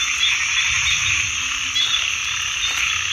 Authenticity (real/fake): real